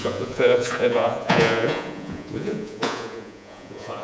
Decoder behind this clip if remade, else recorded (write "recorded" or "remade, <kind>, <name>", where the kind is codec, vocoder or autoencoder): remade, vocoder, Vocos